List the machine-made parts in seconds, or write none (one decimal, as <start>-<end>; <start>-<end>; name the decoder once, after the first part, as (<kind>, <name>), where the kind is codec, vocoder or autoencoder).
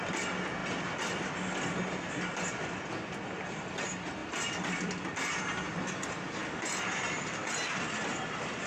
4.2-5.4 (vocoder, BigVGAN v2)